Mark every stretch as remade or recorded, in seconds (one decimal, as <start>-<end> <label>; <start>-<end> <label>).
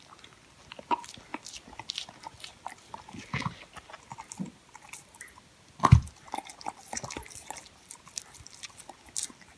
0.0-9.6 recorded